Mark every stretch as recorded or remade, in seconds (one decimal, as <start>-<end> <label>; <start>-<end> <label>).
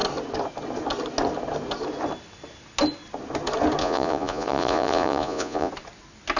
0.0-3.8 recorded; 3.8-5.7 remade; 5.7-6.4 recorded